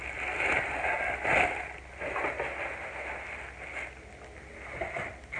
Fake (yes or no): no